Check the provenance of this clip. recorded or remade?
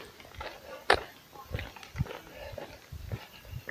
recorded